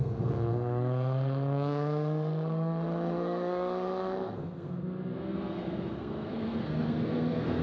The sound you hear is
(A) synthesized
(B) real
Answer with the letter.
A